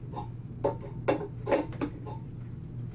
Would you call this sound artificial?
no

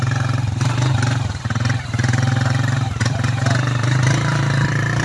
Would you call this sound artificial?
yes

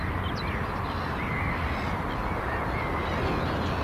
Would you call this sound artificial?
no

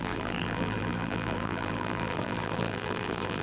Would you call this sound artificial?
yes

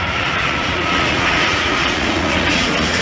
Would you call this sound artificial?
yes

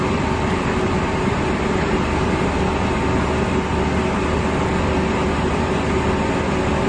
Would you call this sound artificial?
no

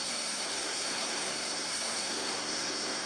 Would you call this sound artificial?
yes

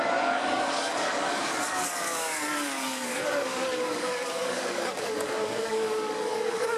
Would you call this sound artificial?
yes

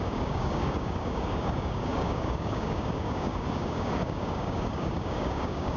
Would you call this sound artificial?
yes